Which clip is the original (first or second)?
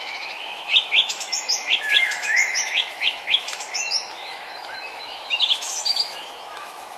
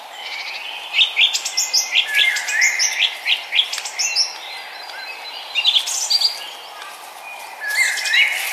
second